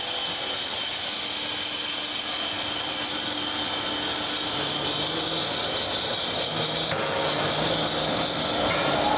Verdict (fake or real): real